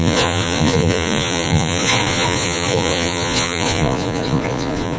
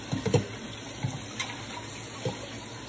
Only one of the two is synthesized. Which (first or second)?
first